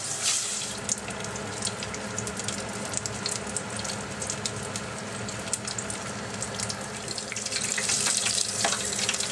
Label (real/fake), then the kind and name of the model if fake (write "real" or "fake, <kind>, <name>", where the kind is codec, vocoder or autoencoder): real